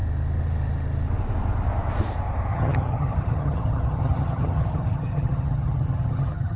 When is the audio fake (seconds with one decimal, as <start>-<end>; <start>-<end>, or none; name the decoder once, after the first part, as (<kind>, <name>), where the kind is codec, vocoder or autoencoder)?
2.5-6.6 (vocoder, HiFi-GAN)